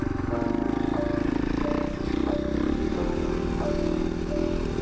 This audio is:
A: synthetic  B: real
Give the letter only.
B